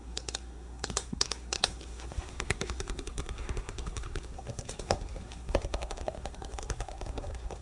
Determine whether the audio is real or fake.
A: fake